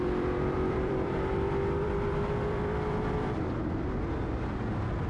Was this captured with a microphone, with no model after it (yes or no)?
no